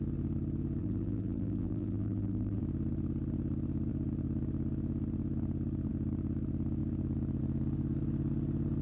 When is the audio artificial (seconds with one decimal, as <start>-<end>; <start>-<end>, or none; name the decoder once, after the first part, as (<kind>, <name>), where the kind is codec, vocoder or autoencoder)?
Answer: 0.8-2.6 (vocoder, BigVGAN v2)